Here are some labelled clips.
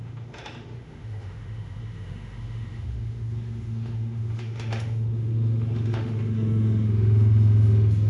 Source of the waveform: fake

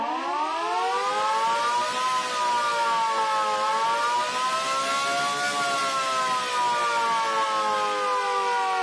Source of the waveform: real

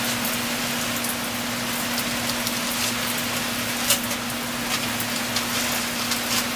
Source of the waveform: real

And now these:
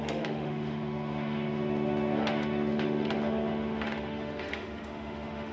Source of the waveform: fake